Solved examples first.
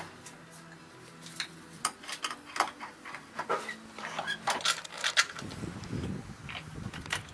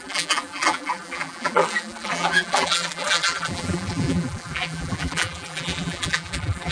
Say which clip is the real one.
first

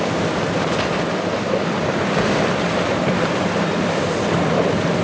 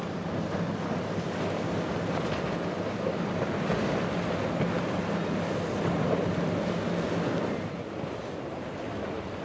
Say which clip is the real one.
second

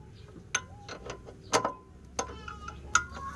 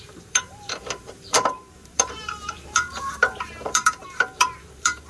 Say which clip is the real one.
first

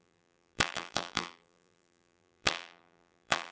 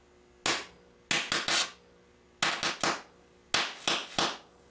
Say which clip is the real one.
second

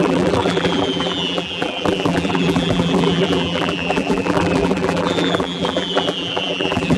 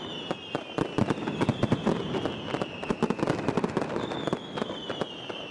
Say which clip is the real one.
second